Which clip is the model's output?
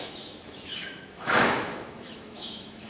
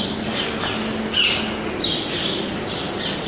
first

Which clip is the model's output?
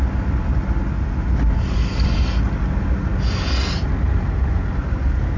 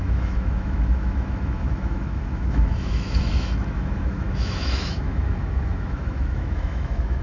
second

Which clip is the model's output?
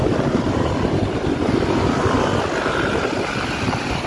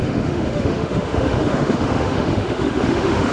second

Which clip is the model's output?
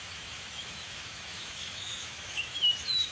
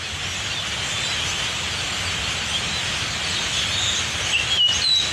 first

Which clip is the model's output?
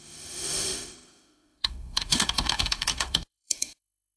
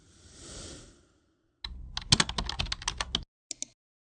first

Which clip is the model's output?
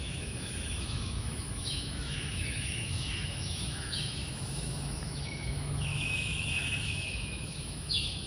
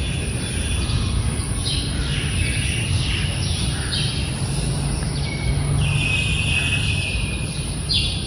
first